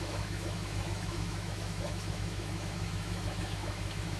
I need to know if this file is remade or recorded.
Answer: remade